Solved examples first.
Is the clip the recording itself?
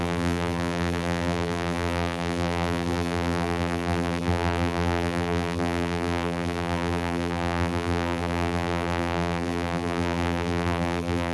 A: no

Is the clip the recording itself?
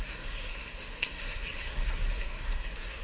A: no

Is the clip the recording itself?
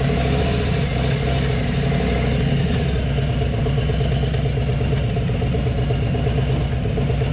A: yes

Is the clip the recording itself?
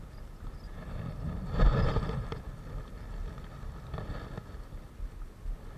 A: yes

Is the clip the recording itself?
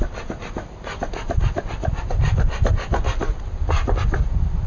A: yes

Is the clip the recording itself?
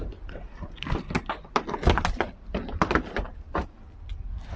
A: yes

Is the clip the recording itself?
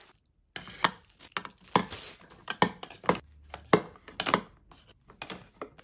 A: yes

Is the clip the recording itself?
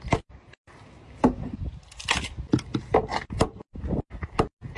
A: yes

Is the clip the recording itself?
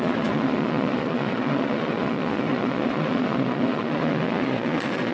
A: no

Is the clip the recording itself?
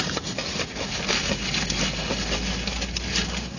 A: yes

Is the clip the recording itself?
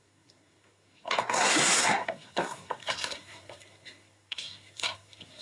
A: no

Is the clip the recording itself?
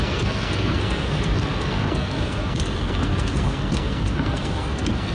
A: no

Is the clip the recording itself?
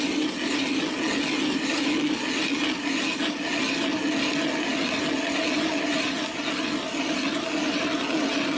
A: yes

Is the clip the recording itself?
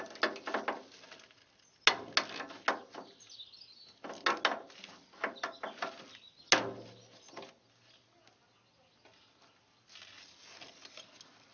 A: yes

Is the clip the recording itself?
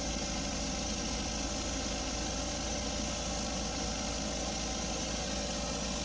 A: yes